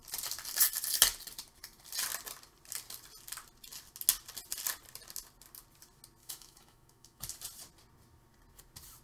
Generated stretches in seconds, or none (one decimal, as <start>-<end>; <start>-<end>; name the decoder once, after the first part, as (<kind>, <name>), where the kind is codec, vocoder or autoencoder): 6.2-7.2 (autoencoder, DAC-VAE)